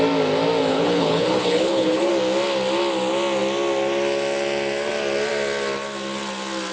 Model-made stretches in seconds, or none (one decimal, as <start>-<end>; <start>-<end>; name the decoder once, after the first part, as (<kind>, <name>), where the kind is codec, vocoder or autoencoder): 0.7-2.1 (codec, HILCodec)